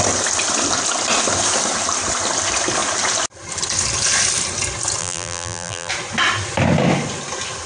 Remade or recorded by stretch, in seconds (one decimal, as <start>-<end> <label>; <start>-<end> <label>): 0.0-5.0 recorded; 5.0-5.9 remade; 5.9-7.7 recorded

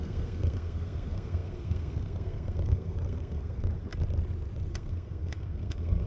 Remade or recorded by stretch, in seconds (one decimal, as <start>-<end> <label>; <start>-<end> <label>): 0.0-3.9 remade; 3.9-4.7 recorded; 4.7-6.1 remade